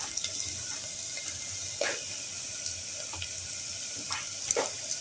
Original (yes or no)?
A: yes